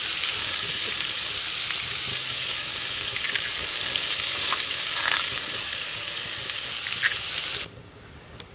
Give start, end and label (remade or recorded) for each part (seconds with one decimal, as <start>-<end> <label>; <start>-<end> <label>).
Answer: 0.0-0.4 recorded; 0.4-1.3 remade; 1.3-2.1 recorded; 2.1-6.7 remade; 6.7-8.5 recorded